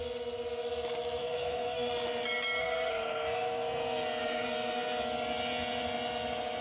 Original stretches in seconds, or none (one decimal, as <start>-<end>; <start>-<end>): 0.0-1.2; 1.9-2.6; 5.0-6.6